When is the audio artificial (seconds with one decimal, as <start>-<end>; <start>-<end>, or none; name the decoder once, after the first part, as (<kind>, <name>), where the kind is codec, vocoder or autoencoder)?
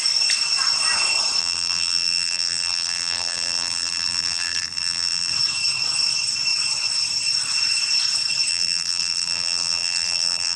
1.4-5.3 (vocoder, BigVGAN v2); 8.5-10.6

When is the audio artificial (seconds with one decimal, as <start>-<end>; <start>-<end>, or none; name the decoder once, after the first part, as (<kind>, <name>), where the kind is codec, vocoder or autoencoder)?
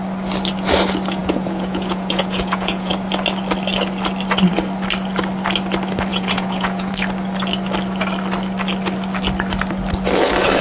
1.2-2.9 (vocoder, Vocos); 6.1-6.9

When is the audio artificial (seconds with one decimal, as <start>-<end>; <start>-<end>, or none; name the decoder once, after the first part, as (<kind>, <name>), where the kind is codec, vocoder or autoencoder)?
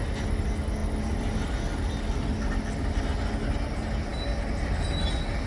none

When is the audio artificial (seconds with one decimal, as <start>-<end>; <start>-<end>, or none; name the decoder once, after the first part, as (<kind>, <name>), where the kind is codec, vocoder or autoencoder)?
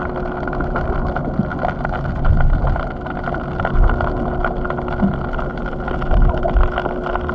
none